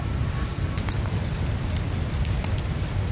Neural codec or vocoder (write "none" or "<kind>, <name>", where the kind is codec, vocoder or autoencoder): none